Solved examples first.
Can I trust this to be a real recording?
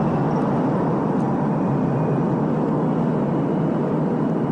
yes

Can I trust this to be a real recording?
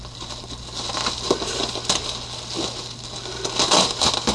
yes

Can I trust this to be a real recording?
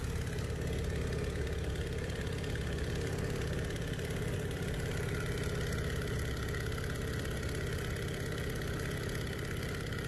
yes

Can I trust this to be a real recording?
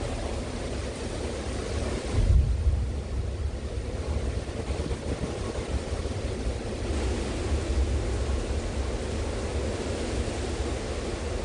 yes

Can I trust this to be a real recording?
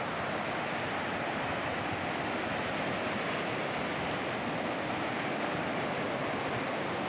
yes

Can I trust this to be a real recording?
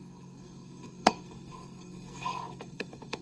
no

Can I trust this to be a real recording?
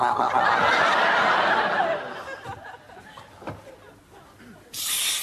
yes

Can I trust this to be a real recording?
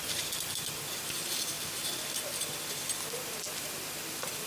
yes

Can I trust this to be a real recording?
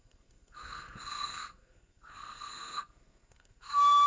no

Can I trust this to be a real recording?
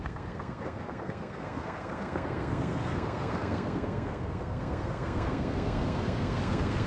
no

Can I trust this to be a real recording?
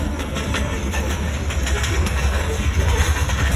no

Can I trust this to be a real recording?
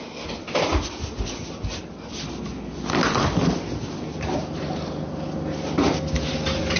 yes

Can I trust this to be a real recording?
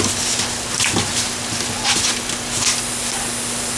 yes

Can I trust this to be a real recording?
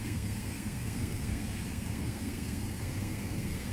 no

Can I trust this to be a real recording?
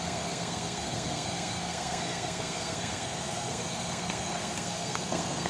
no